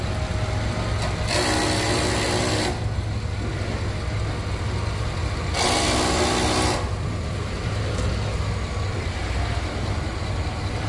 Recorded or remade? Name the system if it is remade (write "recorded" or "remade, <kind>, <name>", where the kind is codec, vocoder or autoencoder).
recorded